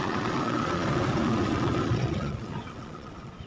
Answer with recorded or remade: remade